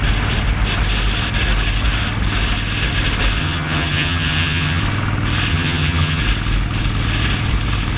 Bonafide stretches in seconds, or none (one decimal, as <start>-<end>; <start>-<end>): 0.0-3.4; 4.8-5.5; 6.2-8.0